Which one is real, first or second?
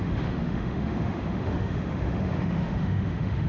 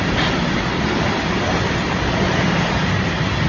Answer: second